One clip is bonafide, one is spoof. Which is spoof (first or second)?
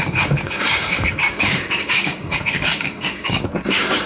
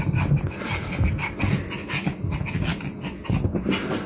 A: first